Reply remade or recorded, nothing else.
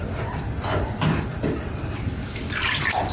remade